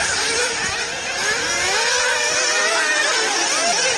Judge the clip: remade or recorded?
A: recorded